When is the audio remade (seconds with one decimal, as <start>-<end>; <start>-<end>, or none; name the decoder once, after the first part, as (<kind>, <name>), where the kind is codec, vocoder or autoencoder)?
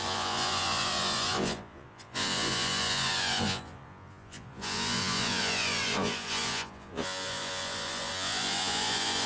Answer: 0.0-9.3 (vocoder, Vocos)